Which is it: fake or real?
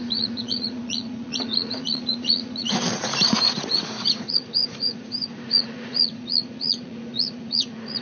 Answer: fake